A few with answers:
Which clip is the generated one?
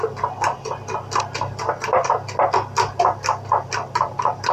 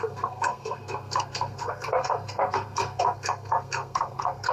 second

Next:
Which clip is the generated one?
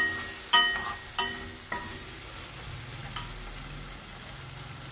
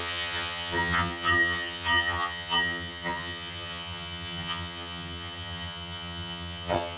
second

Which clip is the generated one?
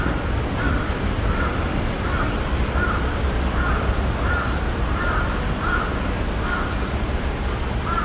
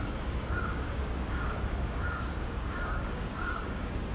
second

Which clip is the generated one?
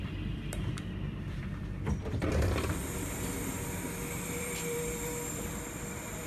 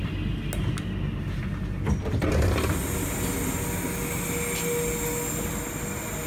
first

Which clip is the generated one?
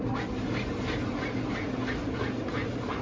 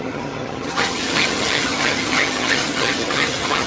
second